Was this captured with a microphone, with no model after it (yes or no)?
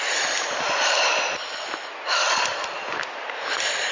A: yes